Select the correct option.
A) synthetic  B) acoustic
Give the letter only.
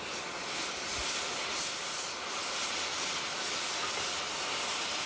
B